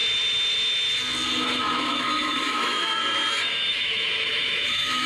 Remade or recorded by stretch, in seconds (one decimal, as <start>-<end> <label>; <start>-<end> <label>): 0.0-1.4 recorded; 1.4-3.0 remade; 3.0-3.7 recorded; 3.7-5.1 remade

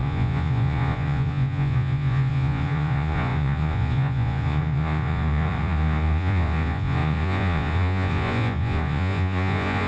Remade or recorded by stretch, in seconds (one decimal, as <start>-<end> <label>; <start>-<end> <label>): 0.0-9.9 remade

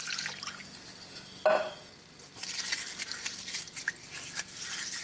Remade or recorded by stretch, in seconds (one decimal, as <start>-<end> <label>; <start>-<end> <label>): 0.0-5.0 recorded

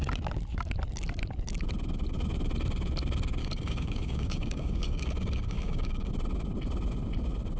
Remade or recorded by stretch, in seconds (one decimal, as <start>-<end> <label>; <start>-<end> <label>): 0.0-3.4 recorded; 3.4-6.1 remade; 6.1-7.6 recorded

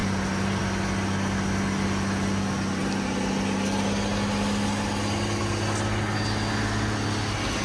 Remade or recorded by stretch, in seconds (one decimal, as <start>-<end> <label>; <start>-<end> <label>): 0.0-7.6 recorded

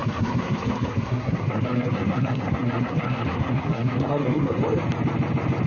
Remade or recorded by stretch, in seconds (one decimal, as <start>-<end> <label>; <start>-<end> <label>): 0.0-4.6 remade; 4.6-5.7 recorded